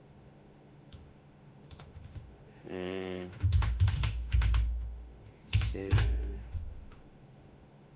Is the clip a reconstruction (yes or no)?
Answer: yes